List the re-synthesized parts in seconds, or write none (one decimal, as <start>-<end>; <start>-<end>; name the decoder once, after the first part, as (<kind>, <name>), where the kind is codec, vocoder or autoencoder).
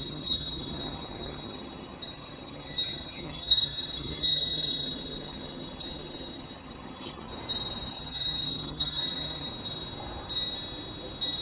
0.0-7.3 (vocoder, HiFi-GAN); 7.9-9.5